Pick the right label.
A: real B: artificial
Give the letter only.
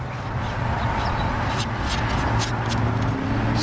A